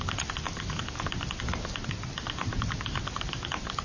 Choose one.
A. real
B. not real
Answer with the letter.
A